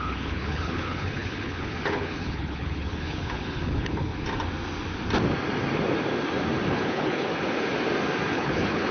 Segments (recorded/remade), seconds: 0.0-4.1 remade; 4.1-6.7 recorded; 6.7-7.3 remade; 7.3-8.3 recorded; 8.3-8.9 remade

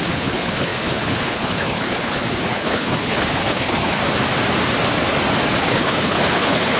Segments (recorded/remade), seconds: 0.0-4.0 remade; 4.0-5.6 recorded; 5.6-6.8 remade

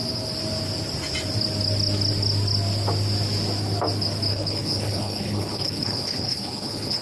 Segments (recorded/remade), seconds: 0.0-4.3 recorded; 4.3-7.0 remade

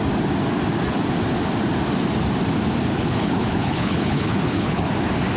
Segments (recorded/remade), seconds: 0.0-2.9 recorded; 2.9-4.9 remade; 4.9-5.4 recorded

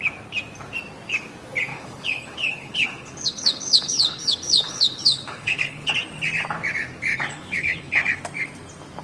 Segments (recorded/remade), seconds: 0.0-1.7 recorded; 1.7-5.9 remade; 5.9-7.1 recorded; 7.1-8.2 remade; 8.2-9.0 recorded

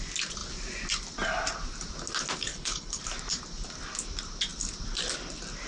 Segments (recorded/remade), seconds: 0.0-2.5 recorded; 2.5-3.0 remade; 3.0-5.7 recorded

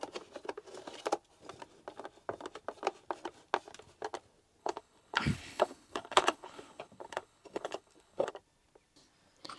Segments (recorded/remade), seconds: 0.0-4.6 recorded; 4.6-8.3 remade; 8.3-9.6 recorded

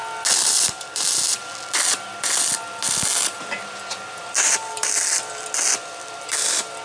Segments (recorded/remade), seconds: 0.0-6.8 recorded